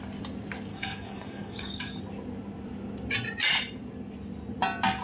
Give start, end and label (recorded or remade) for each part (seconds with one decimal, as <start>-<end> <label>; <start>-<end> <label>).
0.0-0.7 recorded; 0.7-2.0 remade; 2.0-5.0 recorded